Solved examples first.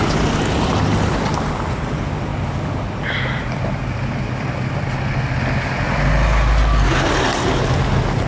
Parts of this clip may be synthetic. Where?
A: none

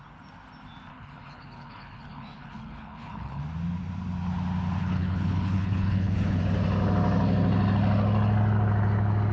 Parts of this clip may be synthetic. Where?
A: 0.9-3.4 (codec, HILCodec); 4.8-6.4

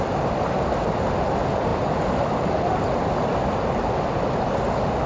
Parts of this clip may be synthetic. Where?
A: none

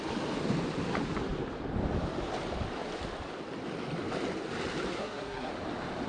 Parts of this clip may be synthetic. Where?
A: 4.9-5.5 (codec, SNAC)